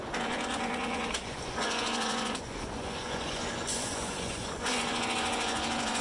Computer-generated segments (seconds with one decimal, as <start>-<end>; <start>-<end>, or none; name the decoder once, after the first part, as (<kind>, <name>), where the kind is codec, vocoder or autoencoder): 0.0-6.0 (vocoder, Vocos)